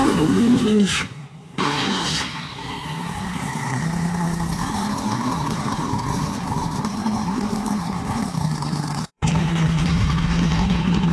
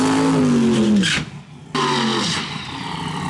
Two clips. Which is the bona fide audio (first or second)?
second